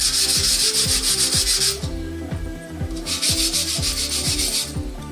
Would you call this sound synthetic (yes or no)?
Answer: no